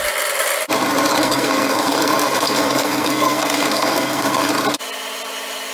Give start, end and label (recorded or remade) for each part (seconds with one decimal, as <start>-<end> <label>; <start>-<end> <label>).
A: 0.0-1.1 recorded; 1.1-4.5 remade; 4.5-5.7 recorded